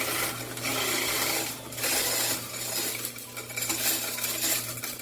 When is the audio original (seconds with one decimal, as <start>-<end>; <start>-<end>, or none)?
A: 0.0-5.0

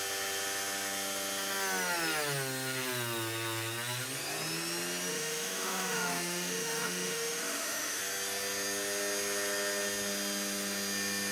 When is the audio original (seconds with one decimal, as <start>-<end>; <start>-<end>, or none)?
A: 0.0-5.1; 8.0-11.3

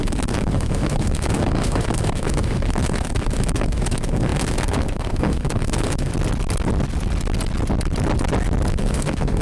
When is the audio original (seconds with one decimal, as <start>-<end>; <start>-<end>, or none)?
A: 6.1-8.7

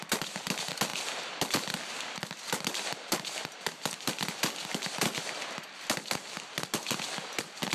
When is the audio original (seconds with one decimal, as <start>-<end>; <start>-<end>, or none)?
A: 0.0-7.7

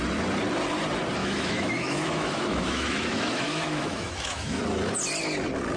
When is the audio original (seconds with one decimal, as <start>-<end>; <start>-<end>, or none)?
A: 0.0-1.2; 4.6-5.8

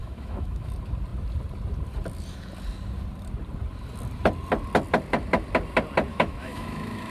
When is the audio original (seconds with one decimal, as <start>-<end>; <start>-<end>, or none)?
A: 0.7-6.1

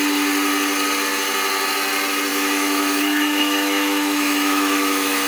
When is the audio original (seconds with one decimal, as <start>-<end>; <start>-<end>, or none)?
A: 0.0-2.3